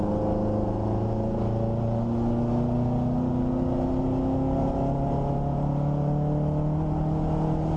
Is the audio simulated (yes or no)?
no